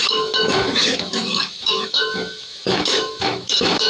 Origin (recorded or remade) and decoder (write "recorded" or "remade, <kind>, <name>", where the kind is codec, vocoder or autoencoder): remade, autoencoder, DAC-VAE